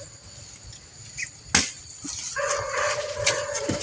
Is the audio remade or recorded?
recorded